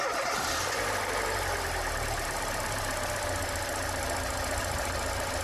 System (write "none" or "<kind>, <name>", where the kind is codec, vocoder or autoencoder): none